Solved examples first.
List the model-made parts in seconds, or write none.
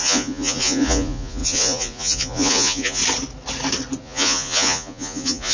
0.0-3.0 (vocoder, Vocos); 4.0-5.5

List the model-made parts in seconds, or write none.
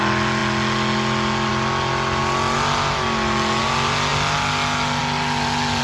none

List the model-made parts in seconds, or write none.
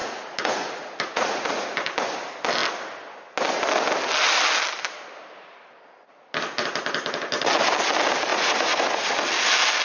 0.0-1.7 (vocoder, Vocos); 8.3-9.1